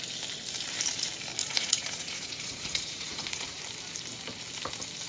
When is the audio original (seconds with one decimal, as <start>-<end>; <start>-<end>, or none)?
0.0-1.4; 3.6-5.1